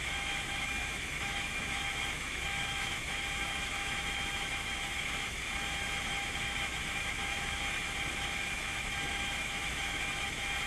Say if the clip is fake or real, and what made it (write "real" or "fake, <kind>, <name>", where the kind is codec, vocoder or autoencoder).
fake, autoencoder, DAC-VAE